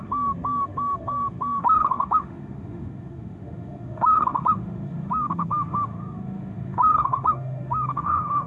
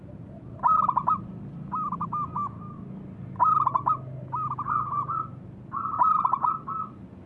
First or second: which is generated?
first